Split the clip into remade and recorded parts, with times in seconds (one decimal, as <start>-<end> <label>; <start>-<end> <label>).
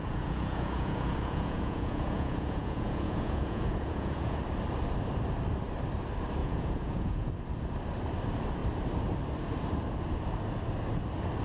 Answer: 0.0-4.4 remade; 4.4-6.4 recorded; 6.4-7.3 remade; 7.3-11.4 recorded